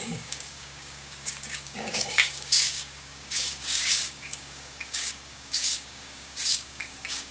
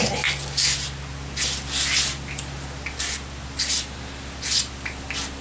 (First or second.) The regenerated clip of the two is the first